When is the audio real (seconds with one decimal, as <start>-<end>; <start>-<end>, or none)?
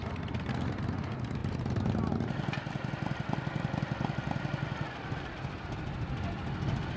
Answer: 0.0-7.0